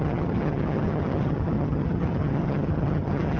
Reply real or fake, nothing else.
fake